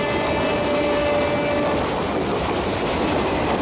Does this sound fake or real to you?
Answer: real